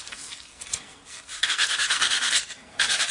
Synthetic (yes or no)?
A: yes